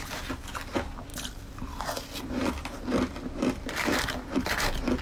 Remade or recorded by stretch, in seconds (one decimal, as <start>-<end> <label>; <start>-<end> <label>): 0.0-5.0 recorded